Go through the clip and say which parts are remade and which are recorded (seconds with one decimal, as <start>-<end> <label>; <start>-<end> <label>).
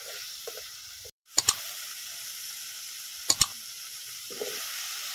0.0-3.1 remade; 3.1-3.9 recorded; 3.9-5.1 remade